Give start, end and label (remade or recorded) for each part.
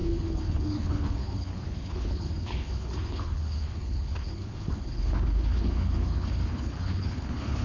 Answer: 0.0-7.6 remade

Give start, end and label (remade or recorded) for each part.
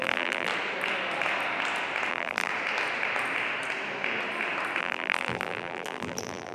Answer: 0.0-0.5 remade; 0.5-2.1 recorded; 2.1-2.5 remade; 2.5-4.8 recorded; 4.8-6.5 remade